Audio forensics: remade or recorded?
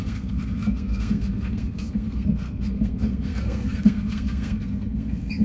remade